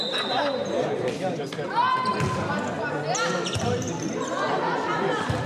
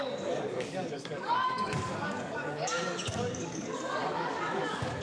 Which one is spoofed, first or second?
second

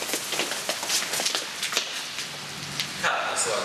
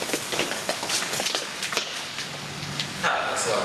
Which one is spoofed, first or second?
second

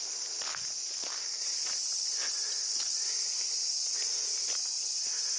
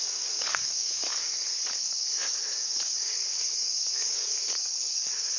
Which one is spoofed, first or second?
second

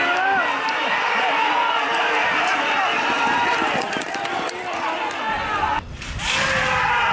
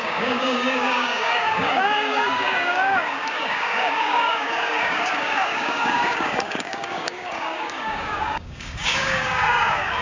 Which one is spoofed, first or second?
second